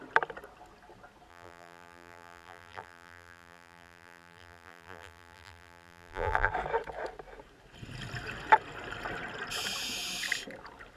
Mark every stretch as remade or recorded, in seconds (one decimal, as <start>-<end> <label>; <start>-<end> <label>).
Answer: 0.0-1.3 recorded; 1.3-6.5 remade; 6.5-11.0 recorded